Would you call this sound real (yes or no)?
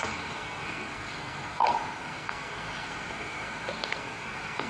no